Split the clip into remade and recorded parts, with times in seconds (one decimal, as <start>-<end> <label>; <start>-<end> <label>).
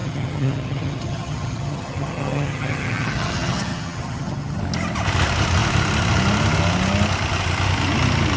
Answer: 0.0-4.6 remade; 4.6-8.4 recorded